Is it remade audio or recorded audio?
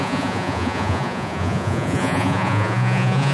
remade